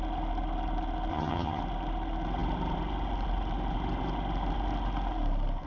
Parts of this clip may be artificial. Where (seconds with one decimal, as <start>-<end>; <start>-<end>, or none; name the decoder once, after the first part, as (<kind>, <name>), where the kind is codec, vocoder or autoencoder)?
1.1-1.6 (vocoder, HiFi-GAN)